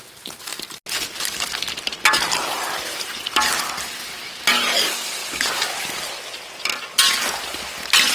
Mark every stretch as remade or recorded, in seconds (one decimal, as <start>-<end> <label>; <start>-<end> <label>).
0.0-8.1 recorded